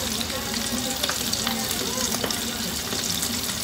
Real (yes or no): yes